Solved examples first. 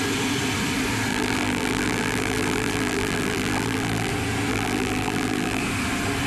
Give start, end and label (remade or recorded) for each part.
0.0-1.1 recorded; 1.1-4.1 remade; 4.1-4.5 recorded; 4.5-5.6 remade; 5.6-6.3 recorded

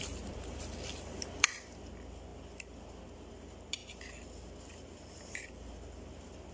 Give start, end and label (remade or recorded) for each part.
0.0-1.8 remade; 1.8-6.5 recorded